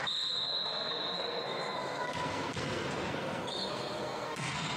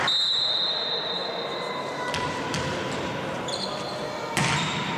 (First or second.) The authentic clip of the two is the second